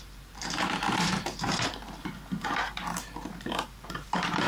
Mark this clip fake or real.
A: fake